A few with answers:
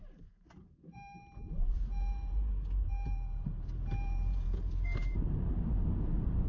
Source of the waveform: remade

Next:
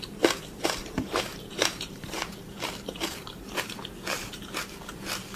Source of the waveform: remade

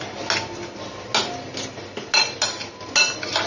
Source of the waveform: recorded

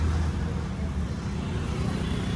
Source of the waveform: remade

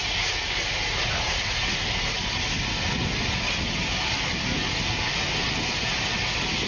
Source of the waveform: recorded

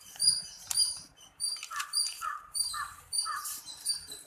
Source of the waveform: remade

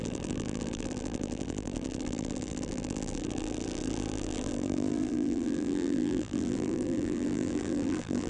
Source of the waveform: remade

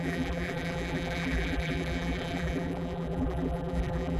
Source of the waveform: remade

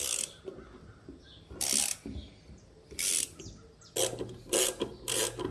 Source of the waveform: recorded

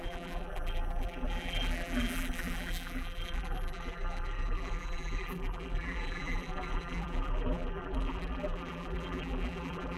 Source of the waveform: remade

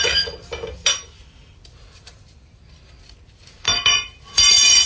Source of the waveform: remade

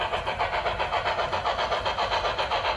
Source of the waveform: recorded